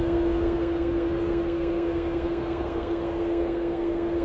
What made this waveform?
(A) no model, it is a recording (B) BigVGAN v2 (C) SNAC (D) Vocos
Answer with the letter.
C